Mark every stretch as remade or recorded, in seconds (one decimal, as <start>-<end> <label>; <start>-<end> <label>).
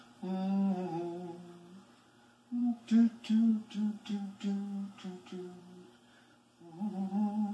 0.0-2.6 recorded; 2.6-3.5 remade; 3.5-4.1 recorded; 4.1-5.6 remade; 5.6-7.5 recorded